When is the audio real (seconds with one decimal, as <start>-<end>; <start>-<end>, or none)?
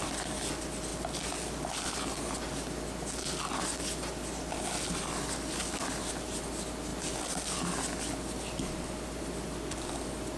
0.0-10.4